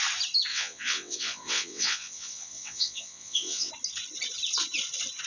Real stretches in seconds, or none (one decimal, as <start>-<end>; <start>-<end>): 0.0-0.5; 3.7-5.3